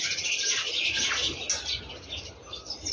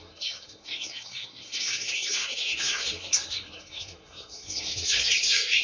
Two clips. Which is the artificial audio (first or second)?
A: second